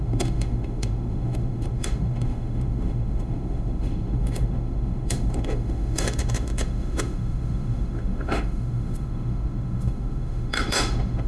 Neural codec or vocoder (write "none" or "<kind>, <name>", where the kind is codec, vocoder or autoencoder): autoencoder, DAC-VAE